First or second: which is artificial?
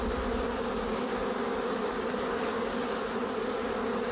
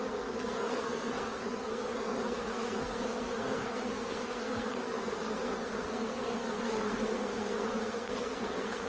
second